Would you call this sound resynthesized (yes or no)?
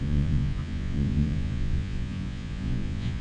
yes